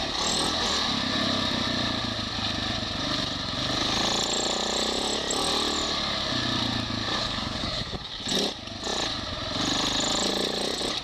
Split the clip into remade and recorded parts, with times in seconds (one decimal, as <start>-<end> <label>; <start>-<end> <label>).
0.0-7.2 recorded; 7.2-8.1 remade; 8.1-11.0 recorded